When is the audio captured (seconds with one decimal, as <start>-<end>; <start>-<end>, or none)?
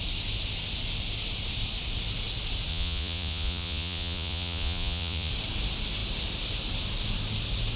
0.0-2.7; 5.3-7.8